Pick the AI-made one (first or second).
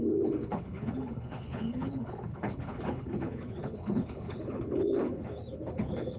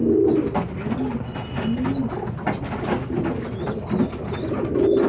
first